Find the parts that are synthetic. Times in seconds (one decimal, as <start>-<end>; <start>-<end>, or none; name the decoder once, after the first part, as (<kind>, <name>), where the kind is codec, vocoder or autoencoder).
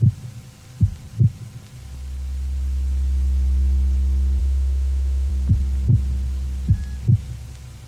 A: 4.4-5.3 (autoencoder, DAC-VAE)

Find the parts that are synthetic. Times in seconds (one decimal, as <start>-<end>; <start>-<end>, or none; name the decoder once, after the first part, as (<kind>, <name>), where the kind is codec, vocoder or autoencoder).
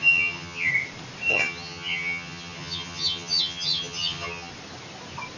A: 0.0-0.7 (vocoder, HiFi-GAN); 1.3-4.5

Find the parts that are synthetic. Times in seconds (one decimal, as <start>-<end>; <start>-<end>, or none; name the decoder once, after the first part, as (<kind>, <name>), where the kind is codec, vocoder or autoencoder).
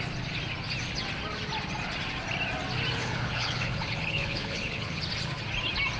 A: 3.0-5.0 (codec, HILCodec)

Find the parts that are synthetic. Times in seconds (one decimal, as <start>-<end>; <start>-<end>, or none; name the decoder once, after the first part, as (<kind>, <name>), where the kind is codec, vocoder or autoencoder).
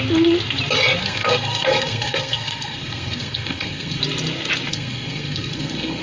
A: 1.0-4.0 (codec, SNAC); 4.7-6.0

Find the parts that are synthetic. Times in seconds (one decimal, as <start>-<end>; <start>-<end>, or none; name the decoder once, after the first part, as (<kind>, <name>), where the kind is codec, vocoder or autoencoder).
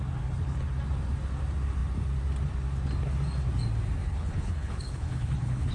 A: 4.0-5.7 (codec, HILCodec)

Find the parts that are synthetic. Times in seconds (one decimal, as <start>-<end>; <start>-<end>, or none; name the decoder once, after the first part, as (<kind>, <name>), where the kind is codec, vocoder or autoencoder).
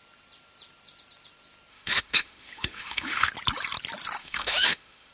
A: 1.7-3.3 (autoencoder, DAC-VAE); 4.2-5.1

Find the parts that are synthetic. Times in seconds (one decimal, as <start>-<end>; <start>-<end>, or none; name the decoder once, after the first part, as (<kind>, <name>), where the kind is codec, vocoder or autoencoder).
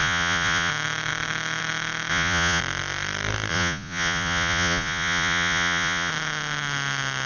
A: 0.0-0.7 (vocoder, Vocos); 2.1-2.6; 3.5-6.1